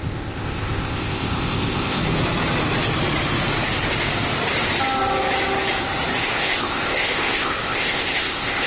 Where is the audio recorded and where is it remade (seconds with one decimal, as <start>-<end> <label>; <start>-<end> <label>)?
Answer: 0.0-2.0 remade; 2.0-6.2 recorded; 6.2-8.7 remade